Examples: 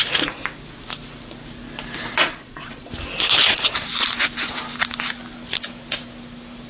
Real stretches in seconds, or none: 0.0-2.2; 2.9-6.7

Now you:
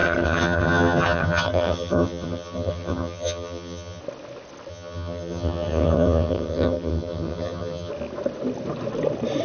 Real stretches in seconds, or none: 4.0-4.7; 7.9-9.4

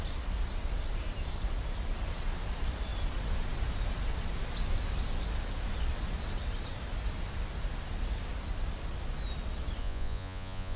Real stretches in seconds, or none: 0.0-9.8

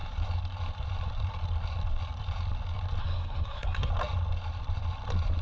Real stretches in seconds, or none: 0.0-3.0; 3.9-5.4

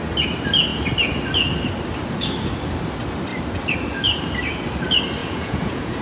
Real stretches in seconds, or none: 0.0-5.2